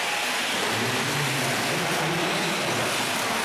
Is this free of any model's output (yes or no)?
yes